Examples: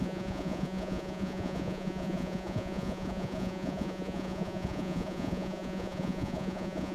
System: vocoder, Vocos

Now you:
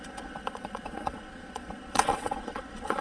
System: vocoder, Vocos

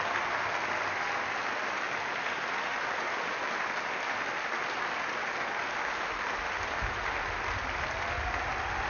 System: none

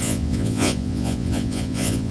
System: vocoder, Vocos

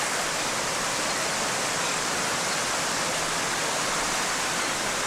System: none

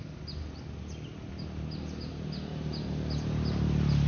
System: none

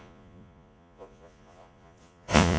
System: vocoder, Vocos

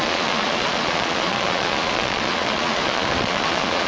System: vocoder, Vocos